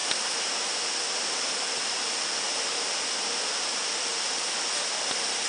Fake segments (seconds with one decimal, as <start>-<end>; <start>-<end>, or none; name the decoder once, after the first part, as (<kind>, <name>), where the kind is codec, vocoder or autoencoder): none